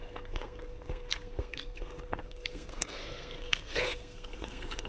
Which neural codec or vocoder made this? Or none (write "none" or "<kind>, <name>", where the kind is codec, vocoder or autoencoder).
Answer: codec, SNAC